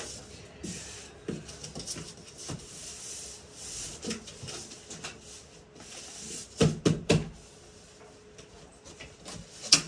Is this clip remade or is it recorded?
recorded